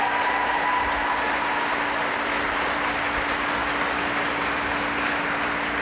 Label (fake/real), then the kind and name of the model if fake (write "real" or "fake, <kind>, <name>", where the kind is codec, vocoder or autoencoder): real